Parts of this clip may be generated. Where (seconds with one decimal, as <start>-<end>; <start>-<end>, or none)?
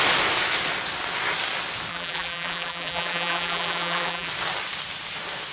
1.9-4.3